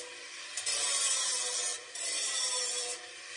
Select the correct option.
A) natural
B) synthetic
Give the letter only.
A